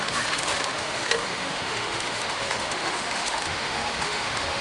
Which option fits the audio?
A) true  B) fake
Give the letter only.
B